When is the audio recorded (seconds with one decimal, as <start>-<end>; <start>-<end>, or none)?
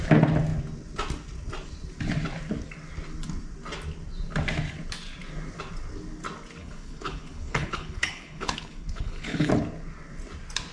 0.0-6.6; 9.5-10.7